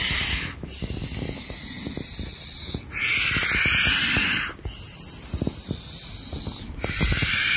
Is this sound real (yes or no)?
yes